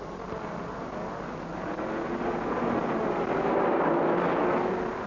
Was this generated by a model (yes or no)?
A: no